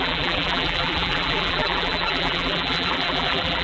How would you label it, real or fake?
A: fake